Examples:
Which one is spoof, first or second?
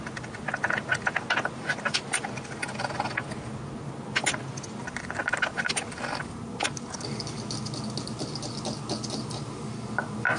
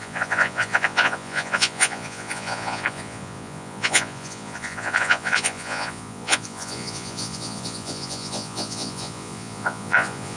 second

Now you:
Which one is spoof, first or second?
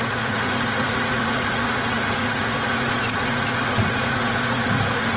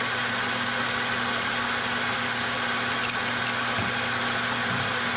first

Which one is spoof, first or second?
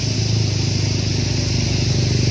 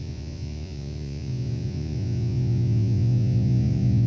second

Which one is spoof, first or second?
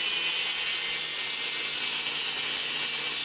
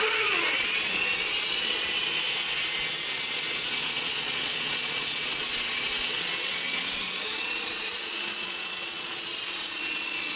second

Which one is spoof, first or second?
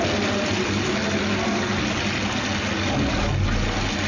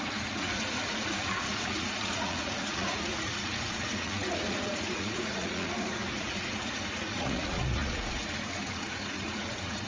second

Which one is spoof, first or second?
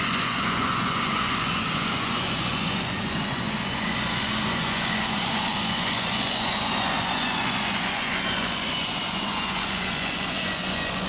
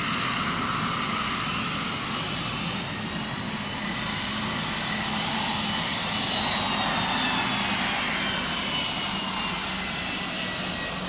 first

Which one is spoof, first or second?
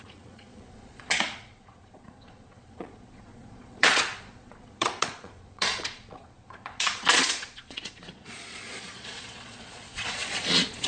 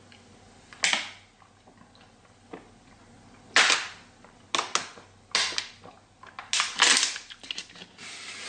first